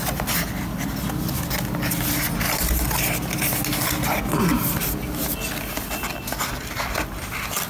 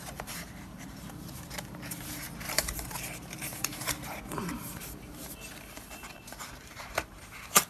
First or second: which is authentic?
first